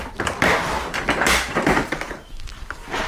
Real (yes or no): yes